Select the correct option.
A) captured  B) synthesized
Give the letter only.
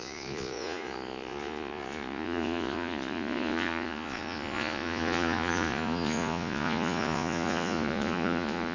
B